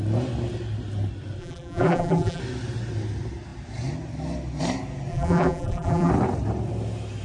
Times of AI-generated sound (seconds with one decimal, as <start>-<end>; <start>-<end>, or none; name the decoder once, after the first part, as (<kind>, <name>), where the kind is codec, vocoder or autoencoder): 1.4-2.4 (vocoder, BigVGAN v2); 5.1-6.1